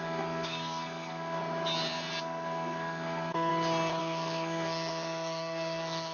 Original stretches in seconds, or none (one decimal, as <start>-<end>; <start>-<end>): 1.4-2.2; 3.5-4.0